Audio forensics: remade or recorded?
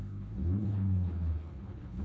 remade